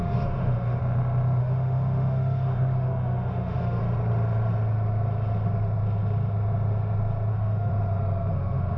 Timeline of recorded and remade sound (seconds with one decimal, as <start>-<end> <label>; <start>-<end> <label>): 0.0-0.8 remade; 0.8-1.4 recorded; 1.4-3.8 remade; 3.8-7.3 recorded; 7.3-7.7 remade; 7.7-8.3 recorded; 8.3-8.8 remade